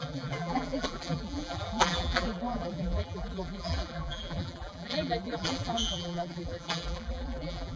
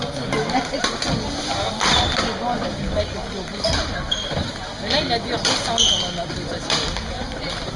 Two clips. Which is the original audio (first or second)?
second